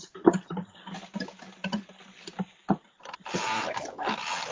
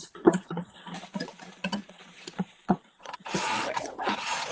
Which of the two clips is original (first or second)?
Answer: first